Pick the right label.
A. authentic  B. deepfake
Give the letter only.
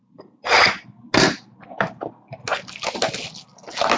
A